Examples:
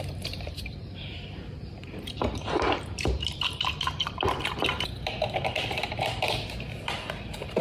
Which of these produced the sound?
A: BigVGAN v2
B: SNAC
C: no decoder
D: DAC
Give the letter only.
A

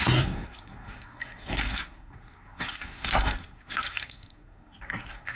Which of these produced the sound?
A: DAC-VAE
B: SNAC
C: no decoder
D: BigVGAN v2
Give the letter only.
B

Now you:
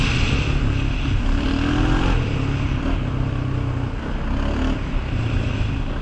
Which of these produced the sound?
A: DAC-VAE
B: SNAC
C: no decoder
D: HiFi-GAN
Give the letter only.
C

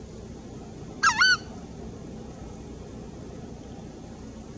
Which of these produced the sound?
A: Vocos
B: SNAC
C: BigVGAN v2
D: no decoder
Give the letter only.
D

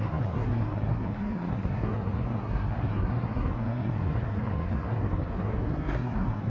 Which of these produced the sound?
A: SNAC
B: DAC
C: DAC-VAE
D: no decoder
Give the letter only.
A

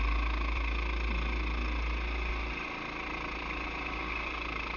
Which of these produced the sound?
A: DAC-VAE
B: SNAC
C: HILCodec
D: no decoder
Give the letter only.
D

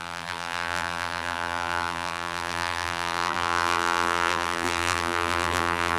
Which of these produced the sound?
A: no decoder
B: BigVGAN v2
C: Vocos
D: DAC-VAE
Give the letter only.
B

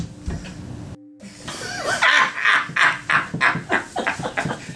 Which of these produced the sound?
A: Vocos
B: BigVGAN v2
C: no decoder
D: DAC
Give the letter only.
C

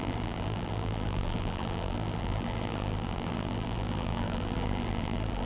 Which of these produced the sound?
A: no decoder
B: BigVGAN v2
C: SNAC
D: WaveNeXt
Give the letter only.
B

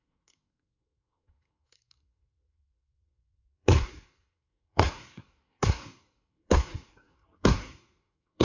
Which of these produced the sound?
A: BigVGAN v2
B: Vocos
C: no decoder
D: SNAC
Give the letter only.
D